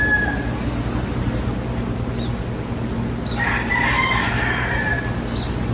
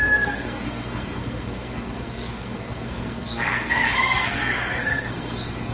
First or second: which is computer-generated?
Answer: second